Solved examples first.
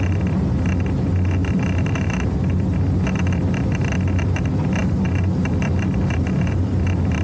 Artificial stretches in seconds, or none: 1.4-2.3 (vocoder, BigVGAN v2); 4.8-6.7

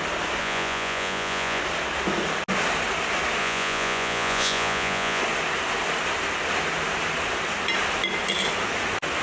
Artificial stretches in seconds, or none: 0.4-1.6 (vocoder, Vocos); 3.4-5.2

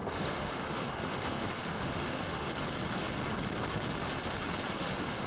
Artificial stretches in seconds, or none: 0.0-2.5 (autoencoder, DAC-VAE); 4.7-5.3